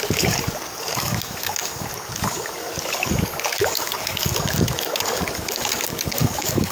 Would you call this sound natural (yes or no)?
no